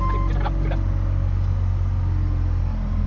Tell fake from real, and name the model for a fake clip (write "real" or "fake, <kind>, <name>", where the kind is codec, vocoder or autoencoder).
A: real